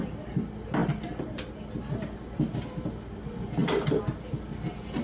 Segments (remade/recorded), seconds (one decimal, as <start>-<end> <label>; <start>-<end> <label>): 0.0-5.0 recorded